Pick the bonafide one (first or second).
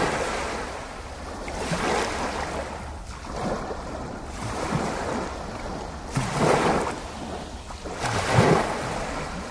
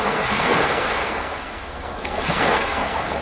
first